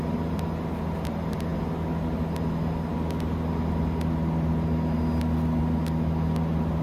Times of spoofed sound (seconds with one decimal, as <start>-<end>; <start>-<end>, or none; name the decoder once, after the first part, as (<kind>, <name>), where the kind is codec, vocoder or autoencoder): none